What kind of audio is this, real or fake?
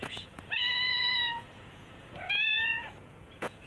fake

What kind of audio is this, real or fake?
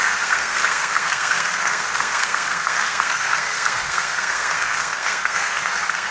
fake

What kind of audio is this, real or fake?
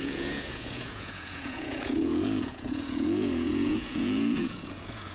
fake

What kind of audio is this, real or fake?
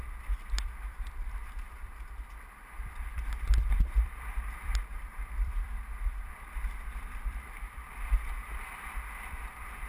fake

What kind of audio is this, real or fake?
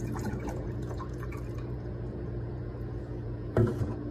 fake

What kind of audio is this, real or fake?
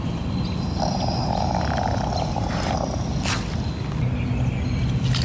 real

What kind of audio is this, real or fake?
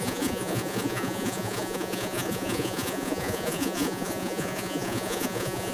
fake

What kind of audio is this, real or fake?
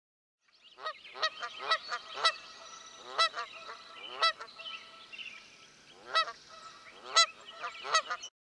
real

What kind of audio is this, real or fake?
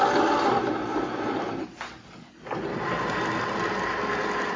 real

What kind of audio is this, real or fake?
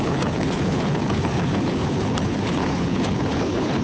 fake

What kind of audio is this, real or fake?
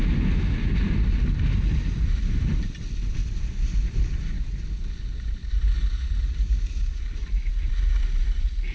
real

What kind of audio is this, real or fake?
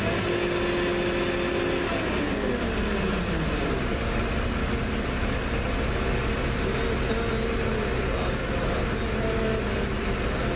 real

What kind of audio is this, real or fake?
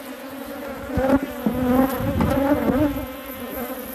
real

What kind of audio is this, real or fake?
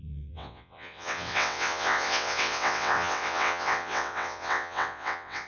fake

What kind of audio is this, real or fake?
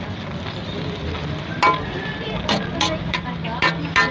real